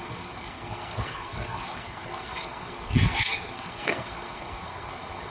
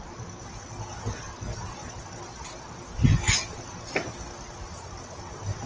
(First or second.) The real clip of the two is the second